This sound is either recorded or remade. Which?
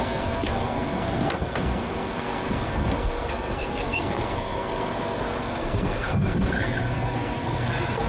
remade